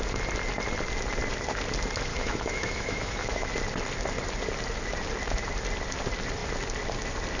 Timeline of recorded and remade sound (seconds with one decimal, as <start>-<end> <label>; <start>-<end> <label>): 0.0-2.1 recorded; 2.1-3.5 remade; 3.5-7.4 recorded